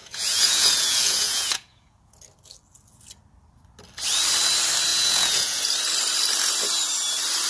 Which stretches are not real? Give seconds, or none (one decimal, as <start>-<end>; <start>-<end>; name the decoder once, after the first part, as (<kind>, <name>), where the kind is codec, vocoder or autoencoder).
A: 0.0-2.2 (vocoder, Vocos); 4.9-5.6